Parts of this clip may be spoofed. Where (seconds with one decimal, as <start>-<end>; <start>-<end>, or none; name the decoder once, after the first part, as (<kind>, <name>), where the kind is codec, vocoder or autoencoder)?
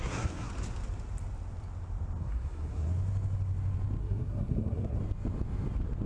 0.0-0.5 (codec, SNAC); 2.2-2.9; 4.0-5.0